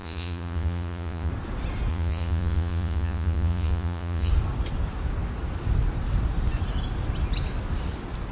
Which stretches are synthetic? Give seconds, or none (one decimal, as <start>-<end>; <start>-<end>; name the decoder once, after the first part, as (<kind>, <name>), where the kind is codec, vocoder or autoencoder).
0.0-1.3 (vocoder, Vocos); 1.9-4.3